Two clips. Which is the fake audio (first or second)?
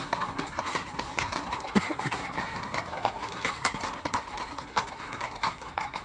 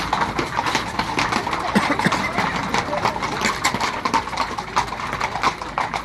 first